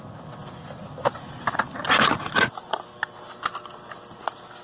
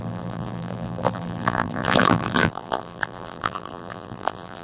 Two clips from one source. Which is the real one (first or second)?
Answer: first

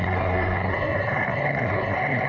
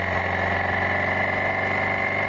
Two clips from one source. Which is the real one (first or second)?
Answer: second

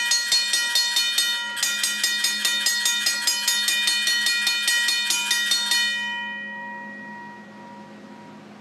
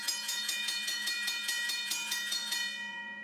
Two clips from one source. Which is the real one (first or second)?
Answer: first